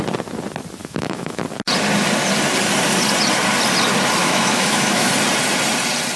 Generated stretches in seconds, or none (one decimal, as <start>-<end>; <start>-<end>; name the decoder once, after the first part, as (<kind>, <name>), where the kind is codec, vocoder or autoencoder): 0.8-1.4 (autoencoder, DAC-VAE); 4.2-5.1